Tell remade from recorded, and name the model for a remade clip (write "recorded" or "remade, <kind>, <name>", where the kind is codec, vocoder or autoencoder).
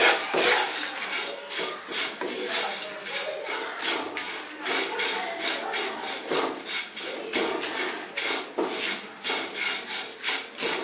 recorded